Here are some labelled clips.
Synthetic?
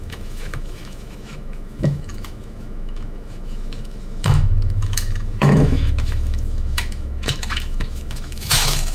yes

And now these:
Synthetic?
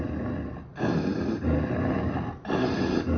no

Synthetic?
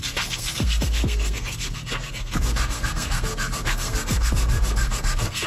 yes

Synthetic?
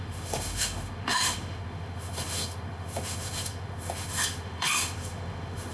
yes